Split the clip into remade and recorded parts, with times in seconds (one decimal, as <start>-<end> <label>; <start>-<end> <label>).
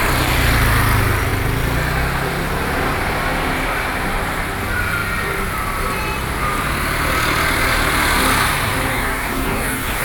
0.0-8.9 recorded; 8.9-10.0 remade